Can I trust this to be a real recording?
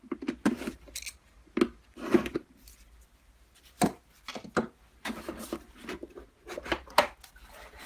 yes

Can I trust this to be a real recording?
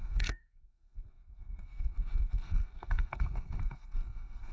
no